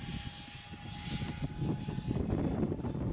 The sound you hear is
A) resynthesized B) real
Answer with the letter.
B